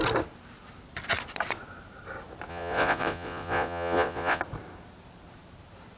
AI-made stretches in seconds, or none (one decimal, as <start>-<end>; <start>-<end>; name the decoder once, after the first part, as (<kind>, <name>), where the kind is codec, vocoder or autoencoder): 2.5-4.4 (vocoder, Vocos)

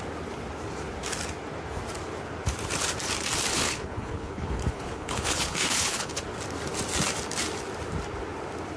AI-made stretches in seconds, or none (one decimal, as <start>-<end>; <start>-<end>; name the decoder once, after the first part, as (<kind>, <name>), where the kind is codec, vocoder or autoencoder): 3.5-6.2 (codec, HILCodec)

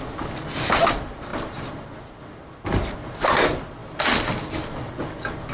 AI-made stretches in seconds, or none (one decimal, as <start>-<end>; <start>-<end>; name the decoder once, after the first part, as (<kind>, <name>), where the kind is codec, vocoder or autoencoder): 3.8-4.9 (vocoder, BigVGAN v2)

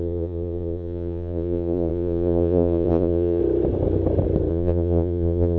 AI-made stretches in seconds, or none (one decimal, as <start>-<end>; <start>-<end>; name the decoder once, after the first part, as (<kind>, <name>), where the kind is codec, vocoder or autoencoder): 0.0-3.4 (vocoder, Vocos); 4.5-5.6

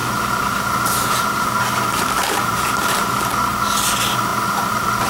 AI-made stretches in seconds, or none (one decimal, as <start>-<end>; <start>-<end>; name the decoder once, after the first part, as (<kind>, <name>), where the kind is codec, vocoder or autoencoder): 0.0-3.1 (vocoder, BigVGAN v2); 4.3-5.1

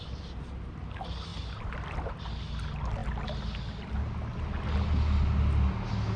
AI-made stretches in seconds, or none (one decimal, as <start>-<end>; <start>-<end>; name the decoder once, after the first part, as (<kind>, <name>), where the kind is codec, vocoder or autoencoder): none

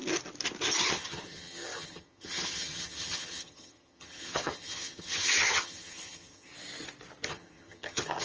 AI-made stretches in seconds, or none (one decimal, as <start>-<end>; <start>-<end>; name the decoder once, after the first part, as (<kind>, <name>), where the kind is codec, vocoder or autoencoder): 0.9-6.5 (vocoder, HiFi-GAN); 7.3-8.2